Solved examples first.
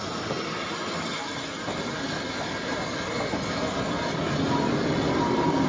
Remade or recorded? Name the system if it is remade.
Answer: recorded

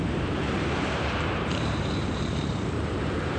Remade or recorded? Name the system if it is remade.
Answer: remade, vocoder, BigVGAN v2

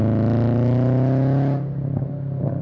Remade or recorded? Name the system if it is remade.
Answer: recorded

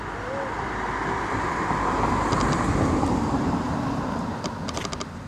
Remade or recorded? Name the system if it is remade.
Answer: recorded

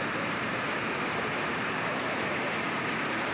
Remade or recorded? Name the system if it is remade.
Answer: remade, vocoder, BigVGAN v2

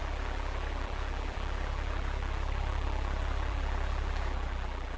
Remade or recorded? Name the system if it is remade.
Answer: remade, vocoder, BigVGAN v2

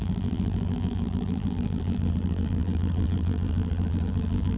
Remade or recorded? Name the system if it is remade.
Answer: remade, vocoder, BigVGAN v2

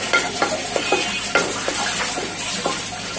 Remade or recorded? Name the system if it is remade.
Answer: recorded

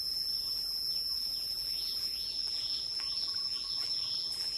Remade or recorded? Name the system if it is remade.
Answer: remade, vocoder, BigVGAN v2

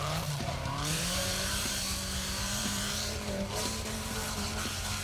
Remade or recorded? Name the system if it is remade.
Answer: remade, vocoder, BigVGAN v2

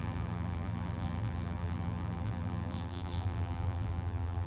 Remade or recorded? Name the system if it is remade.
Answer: remade, vocoder, BigVGAN v2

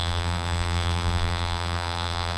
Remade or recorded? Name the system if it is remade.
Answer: remade, vocoder, BigVGAN v2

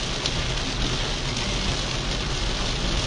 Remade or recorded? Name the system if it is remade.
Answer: recorded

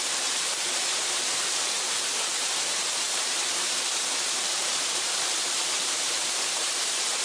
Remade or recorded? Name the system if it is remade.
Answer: remade, vocoder, BigVGAN v2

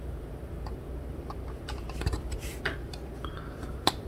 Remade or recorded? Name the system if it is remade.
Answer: remade, vocoder, BigVGAN v2